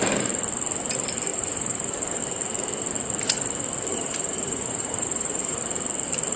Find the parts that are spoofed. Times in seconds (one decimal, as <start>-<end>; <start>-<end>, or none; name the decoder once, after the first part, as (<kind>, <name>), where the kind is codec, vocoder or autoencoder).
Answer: 1.3-2.2 (vocoder, BigVGAN v2); 3.9-5.6